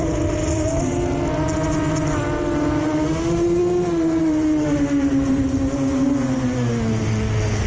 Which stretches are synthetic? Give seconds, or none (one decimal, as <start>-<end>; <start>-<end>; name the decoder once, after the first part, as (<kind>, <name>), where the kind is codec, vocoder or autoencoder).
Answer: none